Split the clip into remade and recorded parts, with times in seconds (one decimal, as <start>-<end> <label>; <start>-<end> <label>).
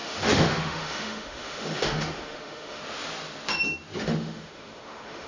0.0-2.8 remade; 2.8-4.0 recorded; 4.0-5.3 remade